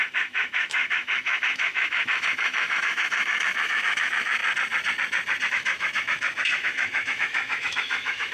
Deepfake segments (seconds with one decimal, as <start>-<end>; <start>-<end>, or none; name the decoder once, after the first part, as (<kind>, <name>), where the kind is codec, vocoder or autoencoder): 0.0-4.4 (autoencoder, DAC-VAE); 5.5-8.3